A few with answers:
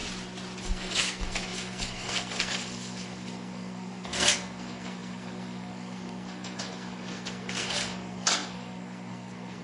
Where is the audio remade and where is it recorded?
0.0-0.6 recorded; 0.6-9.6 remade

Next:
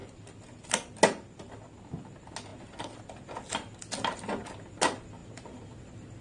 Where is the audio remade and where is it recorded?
0.0-6.2 recorded